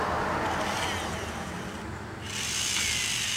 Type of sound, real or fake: real